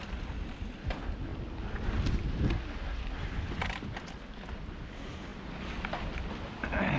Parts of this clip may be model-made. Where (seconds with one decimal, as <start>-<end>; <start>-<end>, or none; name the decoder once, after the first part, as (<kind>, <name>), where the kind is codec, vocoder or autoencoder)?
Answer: none